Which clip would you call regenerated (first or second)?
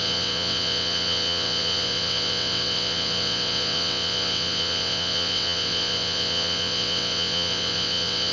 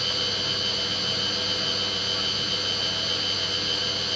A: first